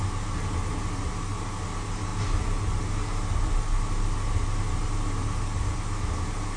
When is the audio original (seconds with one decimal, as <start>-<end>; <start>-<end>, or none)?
0.0-6.6